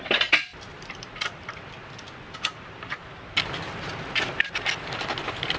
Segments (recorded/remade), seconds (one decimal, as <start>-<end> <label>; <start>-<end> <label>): 0.0-5.6 recorded